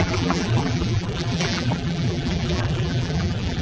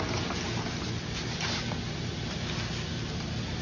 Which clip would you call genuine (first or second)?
second